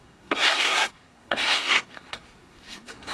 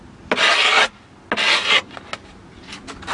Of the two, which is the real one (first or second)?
second